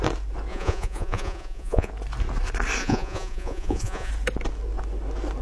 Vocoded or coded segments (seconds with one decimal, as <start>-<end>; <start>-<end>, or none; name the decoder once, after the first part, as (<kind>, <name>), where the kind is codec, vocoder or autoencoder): 0.5-1.9 (vocoder, Vocos); 2.8-4.1